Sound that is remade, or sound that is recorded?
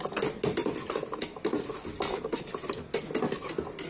recorded